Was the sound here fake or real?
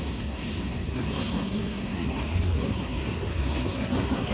fake